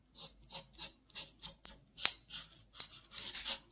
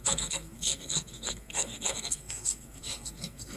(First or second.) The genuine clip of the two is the first